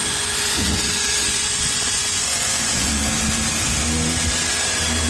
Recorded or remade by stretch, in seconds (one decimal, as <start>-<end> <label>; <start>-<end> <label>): 0.0-2.9 remade; 2.9-5.1 recorded